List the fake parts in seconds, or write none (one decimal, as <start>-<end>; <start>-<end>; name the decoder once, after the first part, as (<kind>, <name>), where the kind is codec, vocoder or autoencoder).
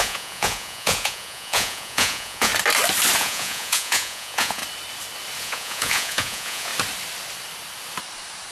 0.0-2.5 (vocoder, Vocos); 3.2-4.6; 5.4-6.7